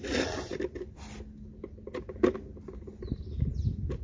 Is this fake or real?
real